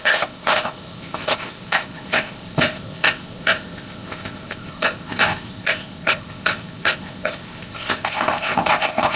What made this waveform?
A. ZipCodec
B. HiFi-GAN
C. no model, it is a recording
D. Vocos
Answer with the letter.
A